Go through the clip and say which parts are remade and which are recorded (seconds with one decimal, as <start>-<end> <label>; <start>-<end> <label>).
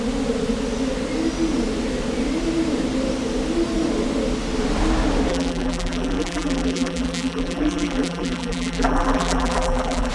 0.0-5.3 recorded; 5.3-10.1 remade